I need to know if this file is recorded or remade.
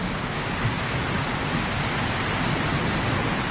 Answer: recorded